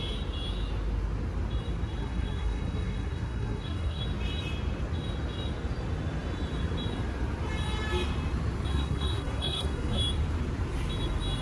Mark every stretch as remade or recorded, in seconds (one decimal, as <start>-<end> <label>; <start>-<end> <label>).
0.0-2.0 recorded; 2.0-4.0 remade; 4.0-8.7 recorded; 8.7-10.0 remade; 10.0-11.4 recorded